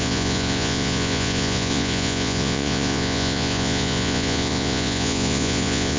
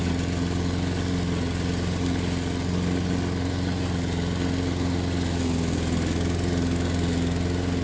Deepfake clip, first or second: first